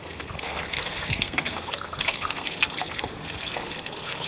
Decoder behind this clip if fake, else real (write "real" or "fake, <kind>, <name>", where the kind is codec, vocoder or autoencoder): fake, codec, SNAC